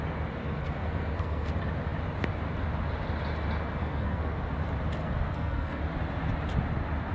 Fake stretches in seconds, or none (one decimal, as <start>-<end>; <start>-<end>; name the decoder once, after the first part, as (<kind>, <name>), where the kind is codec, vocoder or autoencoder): 0.4-1.5 (codec, SNAC); 3.8-4.5; 5.0-5.8